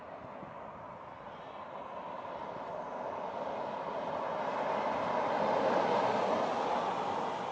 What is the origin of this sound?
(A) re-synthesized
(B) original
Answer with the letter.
B